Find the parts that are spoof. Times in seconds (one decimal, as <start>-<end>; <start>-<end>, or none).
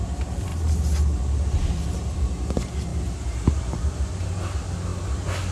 none